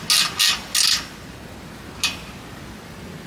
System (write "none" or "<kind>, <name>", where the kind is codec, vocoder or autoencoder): none